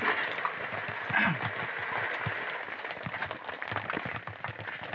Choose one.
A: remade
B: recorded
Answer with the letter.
B